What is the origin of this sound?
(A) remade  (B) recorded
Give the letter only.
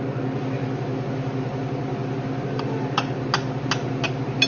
B